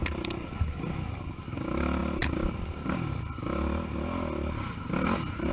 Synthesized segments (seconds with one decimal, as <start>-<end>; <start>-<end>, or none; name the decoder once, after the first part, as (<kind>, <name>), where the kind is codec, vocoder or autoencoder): 0.0-0.6 (vocoder, BigVGAN v2)

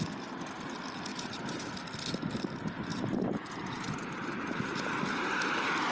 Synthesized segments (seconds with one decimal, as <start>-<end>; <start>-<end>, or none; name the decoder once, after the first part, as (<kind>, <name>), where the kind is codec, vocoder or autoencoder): 1.1-1.7 (vocoder, BigVGAN v2); 2.9-5.4

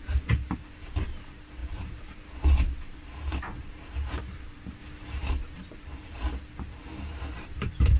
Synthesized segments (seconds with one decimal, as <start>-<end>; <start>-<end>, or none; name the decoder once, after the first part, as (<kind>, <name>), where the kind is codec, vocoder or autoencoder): 0.0-4.8 (vocoder, BigVGAN v2); 5.3-8.0

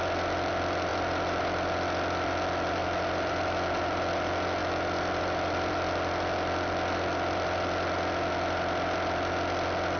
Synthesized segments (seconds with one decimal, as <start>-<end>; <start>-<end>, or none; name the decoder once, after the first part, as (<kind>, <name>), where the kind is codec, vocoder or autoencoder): 0.9-1.4 (vocoder, BigVGAN v2); 2.8-3.4; 4.6-5.7

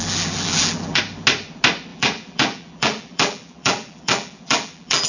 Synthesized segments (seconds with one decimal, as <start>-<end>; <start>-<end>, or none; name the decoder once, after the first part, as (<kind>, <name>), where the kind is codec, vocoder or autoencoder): 0.0-1.0 (vocoder, BigVGAN v2); 1.9-5.1